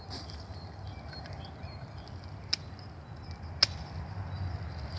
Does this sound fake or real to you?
real